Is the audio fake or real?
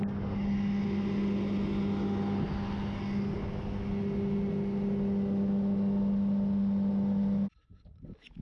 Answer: real